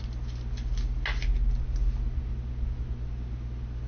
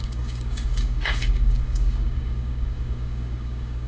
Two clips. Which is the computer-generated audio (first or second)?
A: second